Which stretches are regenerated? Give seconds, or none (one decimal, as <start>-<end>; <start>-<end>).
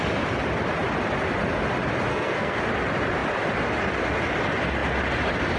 2.1-2.6